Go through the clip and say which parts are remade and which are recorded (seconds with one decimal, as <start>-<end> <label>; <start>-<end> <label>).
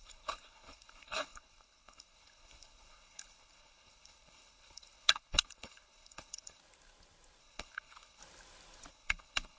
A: 0.0-6.6 remade; 6.6-7.4 recorded; 7.4-8.2 remade; 8.2-8.9 recorded; 8.9-9.6 remade